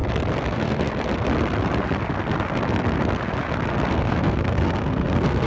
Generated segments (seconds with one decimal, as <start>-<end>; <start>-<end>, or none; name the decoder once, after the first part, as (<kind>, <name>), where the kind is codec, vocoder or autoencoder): 0.5-0.9 (codec, SNAC); 3.9-5.5